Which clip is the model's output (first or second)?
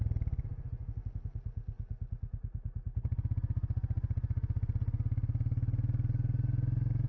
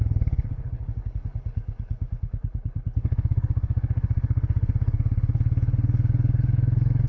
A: second